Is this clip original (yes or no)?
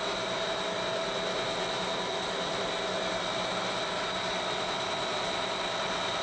yes